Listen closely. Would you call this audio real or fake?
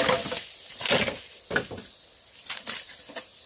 real